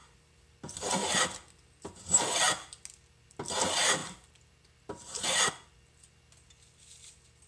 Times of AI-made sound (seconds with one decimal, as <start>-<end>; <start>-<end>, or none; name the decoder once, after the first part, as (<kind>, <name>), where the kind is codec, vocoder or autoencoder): none